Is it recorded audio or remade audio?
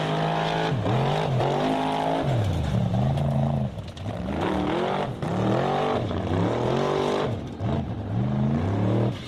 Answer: recorded